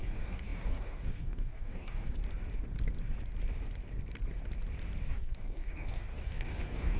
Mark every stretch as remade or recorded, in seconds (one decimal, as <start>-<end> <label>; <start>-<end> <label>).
0.0-2.2 remade; 2.2-5.0 recorded; 5.0-7.0 remade